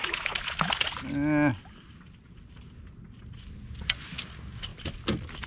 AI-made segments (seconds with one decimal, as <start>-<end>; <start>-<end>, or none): 0.0-0.7